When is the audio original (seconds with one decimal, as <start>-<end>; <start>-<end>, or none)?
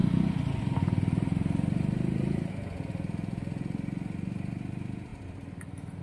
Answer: 2.5-5.1